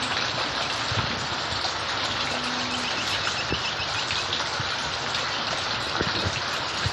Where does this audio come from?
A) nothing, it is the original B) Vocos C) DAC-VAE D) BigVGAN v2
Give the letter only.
A